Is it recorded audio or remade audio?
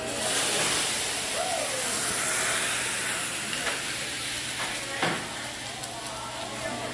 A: recorded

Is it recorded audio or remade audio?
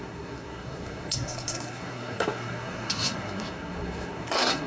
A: remade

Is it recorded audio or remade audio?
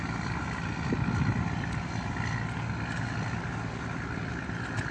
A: recorded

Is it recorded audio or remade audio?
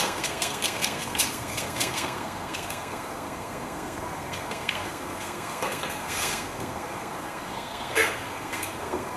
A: remade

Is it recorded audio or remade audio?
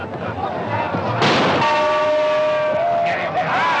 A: recorded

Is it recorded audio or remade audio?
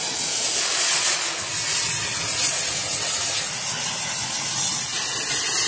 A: recorded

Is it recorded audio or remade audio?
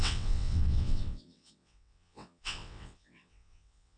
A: remade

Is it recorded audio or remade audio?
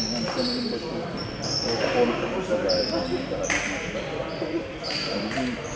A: recorded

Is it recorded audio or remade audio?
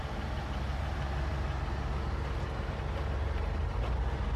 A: recorded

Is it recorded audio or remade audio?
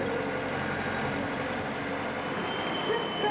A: recorded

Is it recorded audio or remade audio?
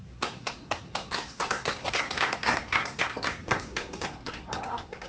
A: remade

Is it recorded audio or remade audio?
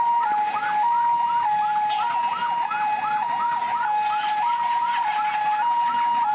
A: recorded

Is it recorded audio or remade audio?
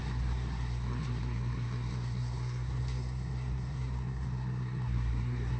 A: remade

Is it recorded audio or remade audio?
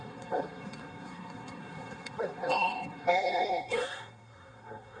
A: remade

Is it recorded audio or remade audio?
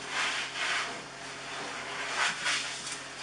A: recorded